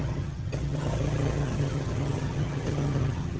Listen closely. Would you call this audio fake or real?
fake